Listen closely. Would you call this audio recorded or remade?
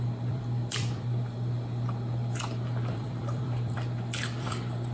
remade